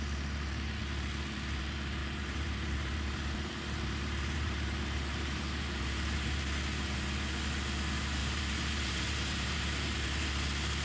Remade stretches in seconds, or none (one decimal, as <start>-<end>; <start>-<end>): 2.0-6.4; 8.2-10.3